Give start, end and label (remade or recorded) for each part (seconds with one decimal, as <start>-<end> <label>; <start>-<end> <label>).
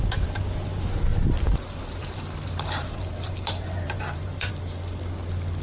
0.0-1.1 recorded; 1.1-4.5 remade; 4.5-5.6 recorded